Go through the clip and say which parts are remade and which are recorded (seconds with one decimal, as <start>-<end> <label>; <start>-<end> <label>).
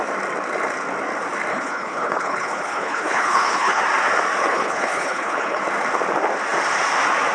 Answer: 0.0-1.5 recorded; 1.5-3.8 remade; 3.8-4.4 recorded; 4.4-5.6 remade; 5.6-7.3 recorded